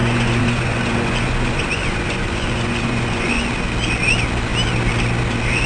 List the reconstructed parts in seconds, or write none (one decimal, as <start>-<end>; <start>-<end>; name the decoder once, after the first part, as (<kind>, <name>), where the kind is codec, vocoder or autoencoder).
0.0-3.4 (vocoder, Vocos)